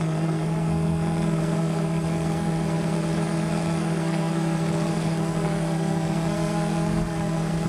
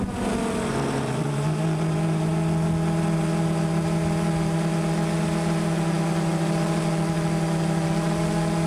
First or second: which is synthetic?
first